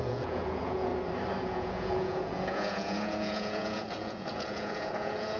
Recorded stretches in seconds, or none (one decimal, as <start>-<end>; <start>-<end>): 0.9-1.4